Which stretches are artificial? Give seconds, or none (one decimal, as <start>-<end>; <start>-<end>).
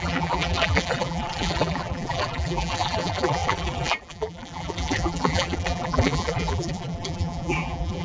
0.0-8.0